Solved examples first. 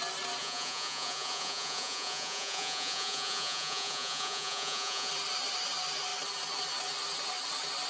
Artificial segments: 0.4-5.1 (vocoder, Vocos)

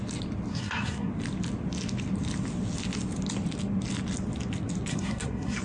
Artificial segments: 0.5-1.1 (codec, SNAC); 4.9-5.6

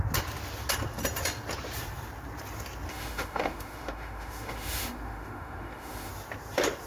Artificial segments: 2.9-6.1 (autoencoder, DAC-VAE)

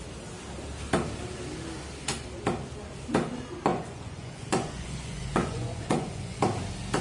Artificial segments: 3.7-6.4 (vocoder, Vocos)

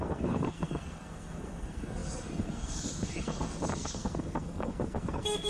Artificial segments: 0.0-5.5 (codec, SNAC)